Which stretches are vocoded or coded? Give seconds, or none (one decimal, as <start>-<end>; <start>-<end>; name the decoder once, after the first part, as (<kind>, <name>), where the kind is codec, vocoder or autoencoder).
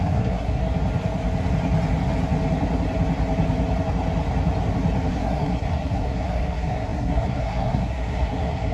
0.0-0.6 (codec, SNAC); 5.1-8.7